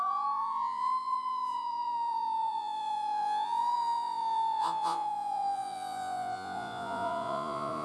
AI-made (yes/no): yes